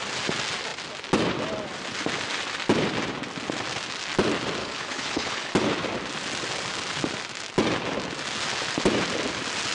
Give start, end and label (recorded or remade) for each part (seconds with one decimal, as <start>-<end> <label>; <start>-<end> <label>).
0.0-4.6 recorded; 4.6-5.5 remade; 5.5-9.7 recorded